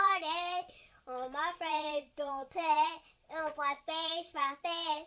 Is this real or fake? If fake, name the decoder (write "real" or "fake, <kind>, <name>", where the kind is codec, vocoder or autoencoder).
fake, vocoder, Vocos